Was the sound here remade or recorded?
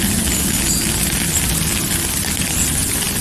recorded